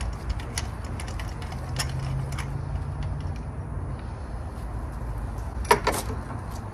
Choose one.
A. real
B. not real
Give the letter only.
A